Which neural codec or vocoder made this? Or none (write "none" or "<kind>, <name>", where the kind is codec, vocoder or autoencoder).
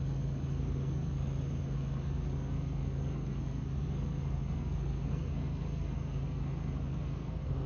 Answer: codec, SNAC